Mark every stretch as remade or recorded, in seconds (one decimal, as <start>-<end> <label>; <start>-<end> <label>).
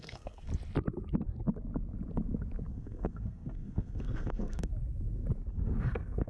0.0-0.5 remade; 0.5-2.7 recorded; 2.7-4.7 remade; 4.7-5.5 recorded; 5.5-6.3 remade